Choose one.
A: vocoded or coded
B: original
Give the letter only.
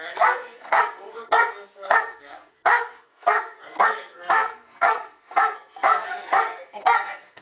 A